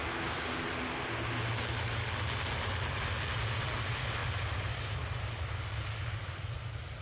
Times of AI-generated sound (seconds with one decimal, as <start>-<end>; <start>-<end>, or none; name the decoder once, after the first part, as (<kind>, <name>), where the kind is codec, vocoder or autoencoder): 4.2-4.7 (vocoder, BigVGAN v2)